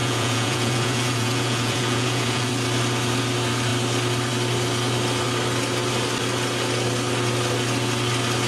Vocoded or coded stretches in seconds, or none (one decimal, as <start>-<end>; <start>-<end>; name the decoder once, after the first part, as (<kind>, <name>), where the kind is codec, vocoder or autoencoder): 0.0-2.5 (vocoder, Vocos)